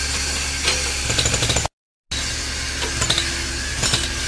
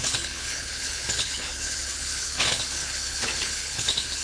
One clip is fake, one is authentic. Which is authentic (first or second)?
first